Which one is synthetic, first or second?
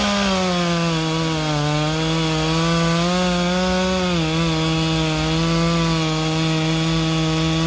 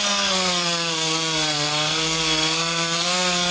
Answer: second